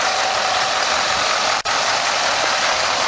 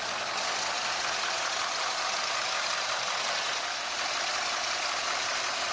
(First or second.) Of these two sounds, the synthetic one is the first